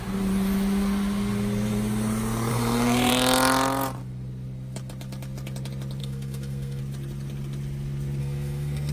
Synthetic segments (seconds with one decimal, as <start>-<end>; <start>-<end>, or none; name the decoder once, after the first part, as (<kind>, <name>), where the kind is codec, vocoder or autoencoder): 2.5-3.1 (codec, SNAC); 6.0-6.8; 8.2-8.9